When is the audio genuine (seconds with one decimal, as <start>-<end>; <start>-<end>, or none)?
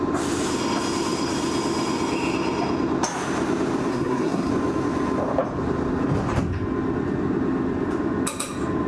0.0-3.9; 4.5-8.9